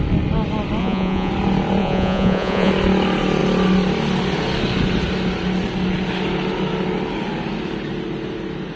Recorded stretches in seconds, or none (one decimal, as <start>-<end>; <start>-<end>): 0.0-0.8; 1.3-1.8; 2.7-8.8